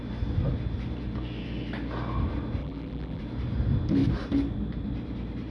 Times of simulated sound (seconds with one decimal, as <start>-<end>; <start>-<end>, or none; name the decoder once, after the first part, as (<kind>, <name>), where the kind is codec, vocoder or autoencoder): 2.6-3.2 (vocoder, BigVGAN v2)